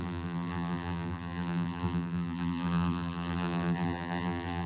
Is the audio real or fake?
fake